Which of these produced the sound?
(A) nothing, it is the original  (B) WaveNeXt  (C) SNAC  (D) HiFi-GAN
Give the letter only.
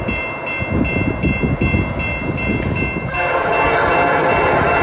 A